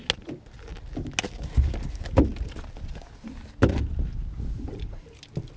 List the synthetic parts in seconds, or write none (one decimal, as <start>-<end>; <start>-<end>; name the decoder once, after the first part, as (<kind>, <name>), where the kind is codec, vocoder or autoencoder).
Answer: none